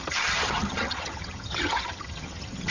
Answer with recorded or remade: remade